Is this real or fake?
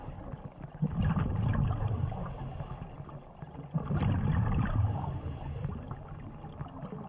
real